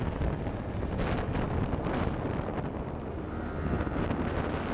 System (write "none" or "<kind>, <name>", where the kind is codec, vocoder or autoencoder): none